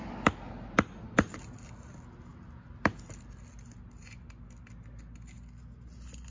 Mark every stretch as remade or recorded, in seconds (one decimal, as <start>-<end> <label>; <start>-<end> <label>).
0.0-6.3 recorded

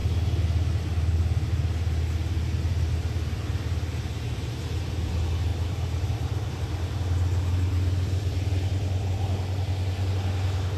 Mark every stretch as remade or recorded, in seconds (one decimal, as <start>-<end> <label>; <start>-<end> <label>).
0.0-5.5 recorded; 5.5-6.5 remade; 6.5-7.3 recorded; 7.3-10.1 remade; 10.1-10.8 recorded

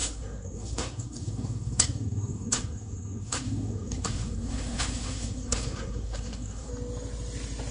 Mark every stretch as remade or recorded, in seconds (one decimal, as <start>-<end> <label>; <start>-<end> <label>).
0.0-6.7 remade; 6.7-7.7 recorded

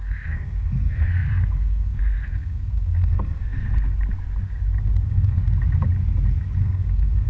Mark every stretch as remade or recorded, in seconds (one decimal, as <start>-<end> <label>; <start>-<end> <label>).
0.0-3.7 remade; 3.7-5.0 recorded; 5.0-5.4 remade; 5.4-6.6 recorded; 6.6-7.3 remade

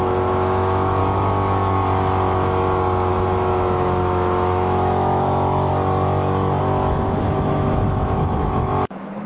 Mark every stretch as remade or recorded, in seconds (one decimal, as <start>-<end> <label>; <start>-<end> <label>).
0.0-1.0 remade; 1.0-3.1 recorded; 3.1-5.7 remade; 5.7-6.6 recorded; 6.6-9.3 remade

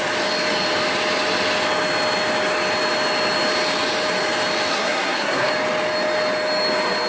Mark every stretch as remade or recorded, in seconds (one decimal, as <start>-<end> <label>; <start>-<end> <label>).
0.0-4.7 recorded; 4.7-5.5 remade; 5.5-7.1 recorded

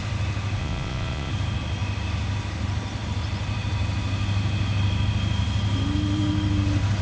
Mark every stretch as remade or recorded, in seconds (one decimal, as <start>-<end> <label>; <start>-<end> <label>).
0.0-0.6 recorded; 0.6-1.3 remade; 1.3-7.0 recorded

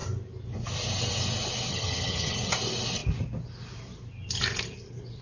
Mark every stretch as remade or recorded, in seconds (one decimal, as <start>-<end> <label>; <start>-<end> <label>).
0.0-1.7 recorded; 1.7-2.5 remade; 2.5-5.2 recorded